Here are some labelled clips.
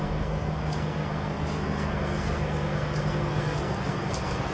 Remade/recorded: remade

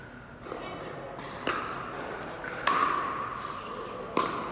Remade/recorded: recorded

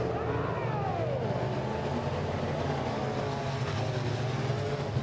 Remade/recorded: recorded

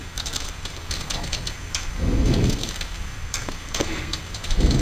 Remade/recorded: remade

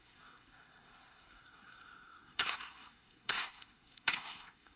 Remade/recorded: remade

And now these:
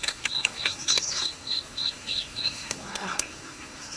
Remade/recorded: remade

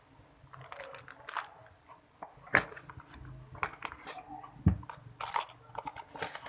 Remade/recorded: recorded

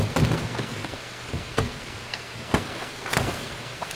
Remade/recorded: remade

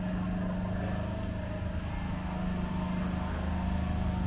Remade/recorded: recorded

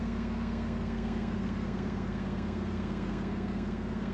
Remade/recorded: remade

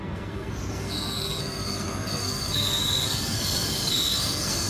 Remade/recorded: remade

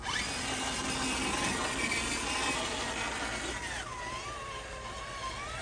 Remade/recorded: recorded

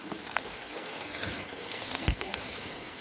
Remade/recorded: remade